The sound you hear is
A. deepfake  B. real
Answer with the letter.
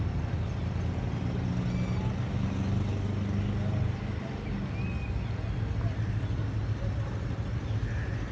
B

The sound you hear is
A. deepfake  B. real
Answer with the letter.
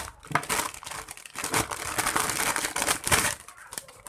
A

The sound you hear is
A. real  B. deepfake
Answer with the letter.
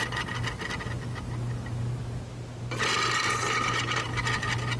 A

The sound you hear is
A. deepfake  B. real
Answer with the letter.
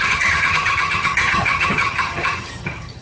A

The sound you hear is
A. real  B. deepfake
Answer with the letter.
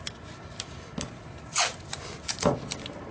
A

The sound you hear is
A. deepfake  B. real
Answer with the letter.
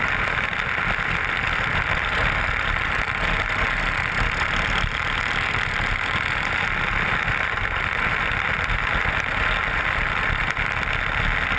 B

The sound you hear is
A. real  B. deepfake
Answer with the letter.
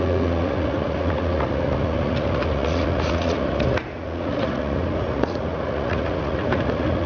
B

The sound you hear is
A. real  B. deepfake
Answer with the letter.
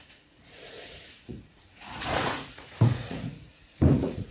B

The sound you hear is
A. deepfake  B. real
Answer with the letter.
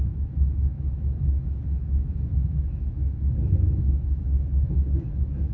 A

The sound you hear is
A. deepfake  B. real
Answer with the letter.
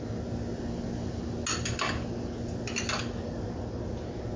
B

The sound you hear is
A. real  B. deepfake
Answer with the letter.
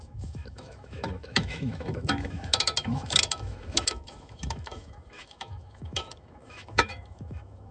B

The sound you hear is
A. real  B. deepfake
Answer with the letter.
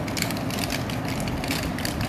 A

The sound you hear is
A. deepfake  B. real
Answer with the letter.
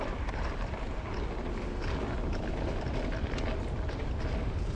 B